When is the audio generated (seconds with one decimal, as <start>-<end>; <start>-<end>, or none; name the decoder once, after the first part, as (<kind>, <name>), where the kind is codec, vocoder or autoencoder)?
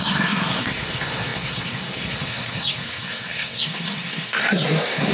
0.0-5.1 (codec, SNAC)